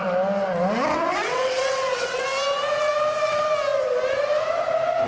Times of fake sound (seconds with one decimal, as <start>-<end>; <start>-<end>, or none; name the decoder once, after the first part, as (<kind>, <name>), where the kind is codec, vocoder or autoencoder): 0.9-2.2 (vocoder, WaveNeXt)